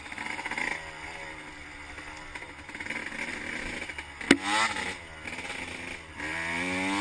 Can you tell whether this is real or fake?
real